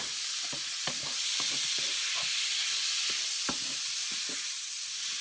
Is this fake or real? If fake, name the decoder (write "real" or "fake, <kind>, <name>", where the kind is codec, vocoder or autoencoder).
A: real